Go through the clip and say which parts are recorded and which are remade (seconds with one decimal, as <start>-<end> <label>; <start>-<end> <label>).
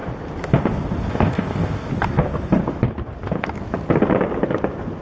0.0-1.1 recorded; 1.1-1.9 remade; 1.9-5.0 recorded